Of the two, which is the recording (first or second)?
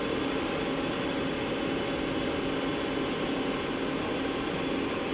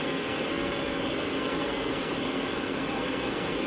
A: first